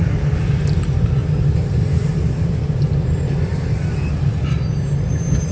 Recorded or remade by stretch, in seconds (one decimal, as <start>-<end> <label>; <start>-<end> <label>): 0.0-5.5 recorded